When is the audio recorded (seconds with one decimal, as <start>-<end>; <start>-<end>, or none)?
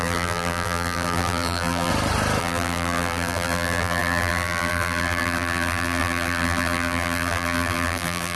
1.9-2.4